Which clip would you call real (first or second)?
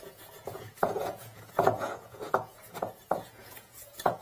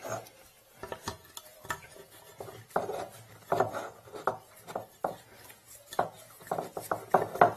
second